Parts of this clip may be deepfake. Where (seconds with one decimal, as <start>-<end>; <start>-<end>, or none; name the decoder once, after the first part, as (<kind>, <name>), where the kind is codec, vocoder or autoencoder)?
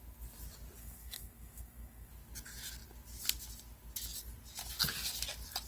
0.8-2.1 (codec, SNAC)